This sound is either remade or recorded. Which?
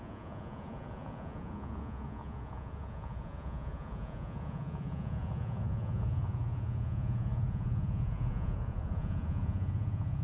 remade